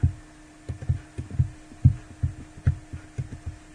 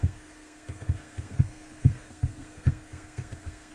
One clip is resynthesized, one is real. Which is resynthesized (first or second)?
second